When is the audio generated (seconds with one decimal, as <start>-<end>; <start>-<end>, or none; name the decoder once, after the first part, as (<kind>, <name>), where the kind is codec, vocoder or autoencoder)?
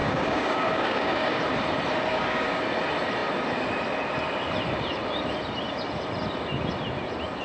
0.0-1.4 (codec, DAC); 2.1-2.6